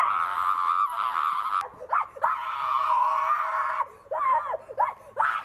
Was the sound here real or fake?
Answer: real